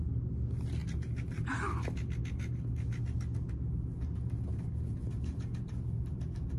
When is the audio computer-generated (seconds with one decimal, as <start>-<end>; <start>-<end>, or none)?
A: none